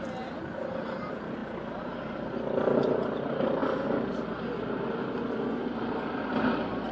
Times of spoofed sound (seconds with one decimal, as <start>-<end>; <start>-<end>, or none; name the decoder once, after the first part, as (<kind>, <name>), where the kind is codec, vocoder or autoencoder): none